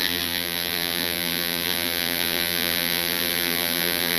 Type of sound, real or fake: fake